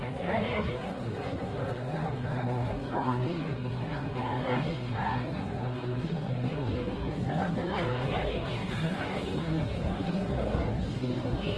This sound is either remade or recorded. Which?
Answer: remade